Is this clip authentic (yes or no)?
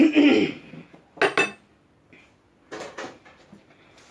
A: yes